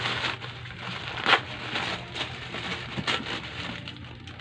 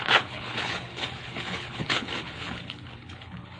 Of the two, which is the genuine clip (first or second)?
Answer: first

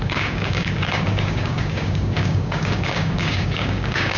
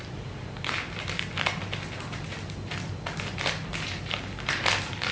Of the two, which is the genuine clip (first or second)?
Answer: second